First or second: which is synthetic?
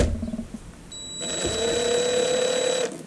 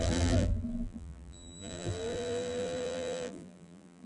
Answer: second